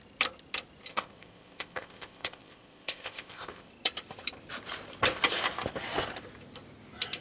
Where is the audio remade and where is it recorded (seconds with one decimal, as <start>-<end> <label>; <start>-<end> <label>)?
0.0-0.9 recorded; 0.9-3.7 remade; 3.7-7.2 recorded